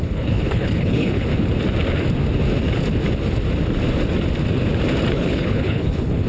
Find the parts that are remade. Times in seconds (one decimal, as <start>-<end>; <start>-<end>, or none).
0.0-1.3; 5.1-6.3